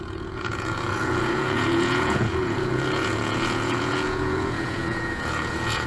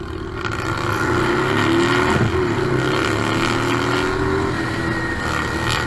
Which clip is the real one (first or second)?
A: second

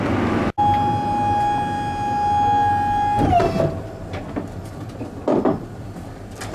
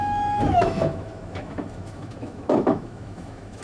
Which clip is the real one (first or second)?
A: first